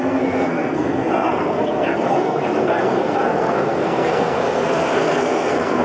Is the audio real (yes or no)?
no